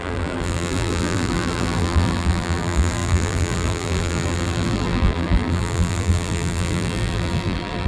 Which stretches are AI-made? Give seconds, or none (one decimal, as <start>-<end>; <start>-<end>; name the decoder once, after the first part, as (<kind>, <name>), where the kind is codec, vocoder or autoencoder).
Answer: 0.0-7.9 (vocoder, BigVGAN v2)